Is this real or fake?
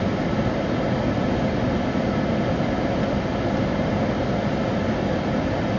real